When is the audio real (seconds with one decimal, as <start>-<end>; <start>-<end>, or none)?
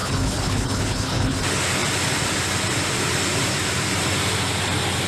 1.4-5.1